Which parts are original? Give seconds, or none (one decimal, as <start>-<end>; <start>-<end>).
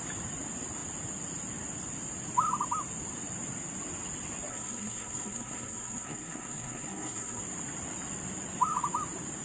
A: 0.0-4.5; 7.4-9.4